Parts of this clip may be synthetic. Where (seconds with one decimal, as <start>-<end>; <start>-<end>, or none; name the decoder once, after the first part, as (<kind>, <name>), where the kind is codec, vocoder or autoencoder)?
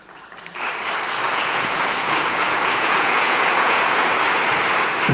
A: 1.2-4.2 (vocoder, Vocos)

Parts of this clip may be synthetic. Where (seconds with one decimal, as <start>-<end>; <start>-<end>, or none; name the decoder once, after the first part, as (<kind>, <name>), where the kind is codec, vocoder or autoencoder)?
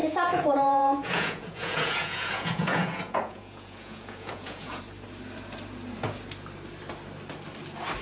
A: 0.0-4.8 (vocoder, Vocos)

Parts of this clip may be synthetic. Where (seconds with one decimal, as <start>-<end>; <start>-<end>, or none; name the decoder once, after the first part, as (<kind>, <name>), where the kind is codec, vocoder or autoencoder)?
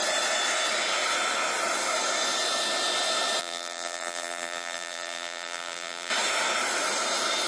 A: 3.4-6.1 (vocoder, BigVGAN v2)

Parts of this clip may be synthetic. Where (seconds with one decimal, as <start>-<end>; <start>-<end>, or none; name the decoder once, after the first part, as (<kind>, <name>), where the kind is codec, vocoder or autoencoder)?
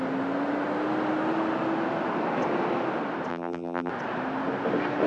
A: 3.3-3.9 (vocoder, BigVGAN v2)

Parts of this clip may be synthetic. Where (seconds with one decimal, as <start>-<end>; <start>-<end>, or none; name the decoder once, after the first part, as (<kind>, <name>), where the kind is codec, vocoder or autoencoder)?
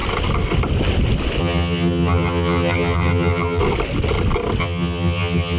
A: 1.4-3.6 (vocoder, HiFi-GAN); 4.6-5.6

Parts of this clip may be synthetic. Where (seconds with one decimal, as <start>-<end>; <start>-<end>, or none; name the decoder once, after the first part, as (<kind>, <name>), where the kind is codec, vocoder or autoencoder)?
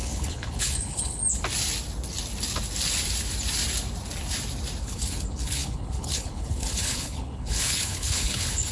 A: 0.0-1.2 (codec, HILCodec); 4.8-8.7